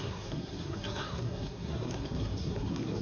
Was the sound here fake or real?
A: fake